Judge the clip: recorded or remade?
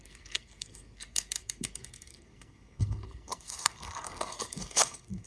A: remade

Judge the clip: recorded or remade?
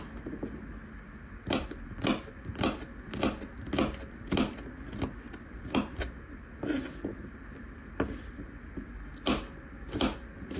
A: recorded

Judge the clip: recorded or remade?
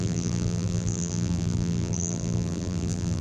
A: remade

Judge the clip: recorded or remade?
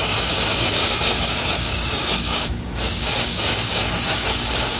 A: remade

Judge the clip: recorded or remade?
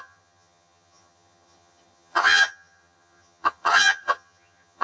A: remade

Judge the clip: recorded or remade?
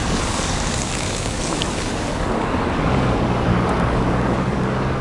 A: remade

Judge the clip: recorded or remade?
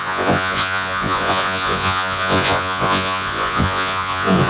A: remade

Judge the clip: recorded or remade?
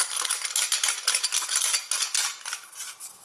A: recorded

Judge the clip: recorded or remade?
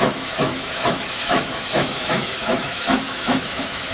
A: remade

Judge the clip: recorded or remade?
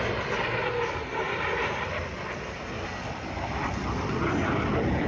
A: recorded